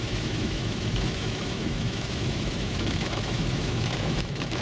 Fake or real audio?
fake